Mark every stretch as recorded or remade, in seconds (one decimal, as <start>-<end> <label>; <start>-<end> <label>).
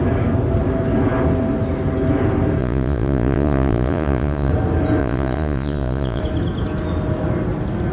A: 0.0-2.6 recorded; 2.6-4.5 remade; 4.5-5.0 recorded; 5.0-6.2 remade; 6.2-7.9 recorded